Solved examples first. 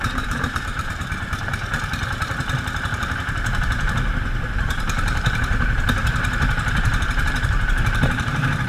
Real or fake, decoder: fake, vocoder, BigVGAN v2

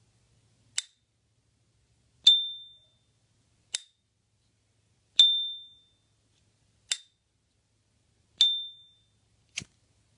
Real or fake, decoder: real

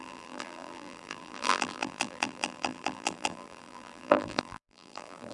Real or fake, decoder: fake, vocoder, BigVGAN v2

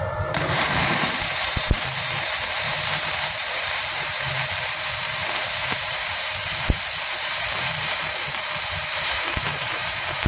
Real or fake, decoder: fake, vocoder, BigVGAN v2